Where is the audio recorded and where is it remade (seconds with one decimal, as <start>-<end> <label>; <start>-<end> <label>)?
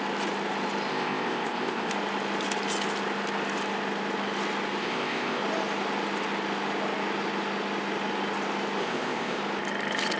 0.0-0.9 recorded; 0.9-1.9 remade; 1.9-4.8 recorded; 4.8-5.4 remade; 5.4-8.8 recorded; 8.8-9.4 remade; 9.4-10.2 recorded